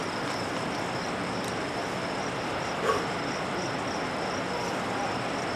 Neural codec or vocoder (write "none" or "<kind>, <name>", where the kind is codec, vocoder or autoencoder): none